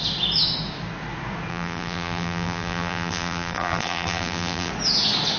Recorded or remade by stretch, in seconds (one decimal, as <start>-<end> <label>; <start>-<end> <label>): 0.0-1.5 recorded; 1.5-4.7 remade; 4.7-5.4 recorded